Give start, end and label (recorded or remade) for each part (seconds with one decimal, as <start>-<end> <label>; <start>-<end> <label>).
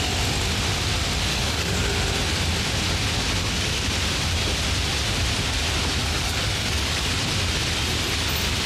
0.0-1.3 recorded; 1.3-1.8 remade; 1.8-6.0 recorded; 6.0-7.1 remade; 7.1-8.7 recorded